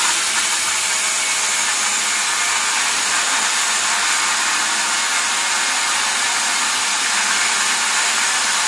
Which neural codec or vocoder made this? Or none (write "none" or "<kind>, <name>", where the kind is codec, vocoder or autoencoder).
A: none